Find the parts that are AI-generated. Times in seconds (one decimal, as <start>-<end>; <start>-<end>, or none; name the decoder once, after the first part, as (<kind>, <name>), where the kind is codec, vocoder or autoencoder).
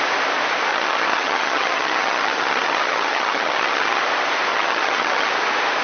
0.7-4.0 (vocoder, HiFi-GAN); 4.5-5.3